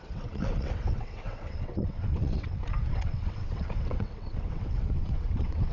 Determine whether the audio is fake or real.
fake